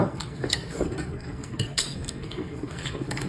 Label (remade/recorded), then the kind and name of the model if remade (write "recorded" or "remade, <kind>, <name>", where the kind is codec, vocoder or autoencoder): remade, codec, SNAC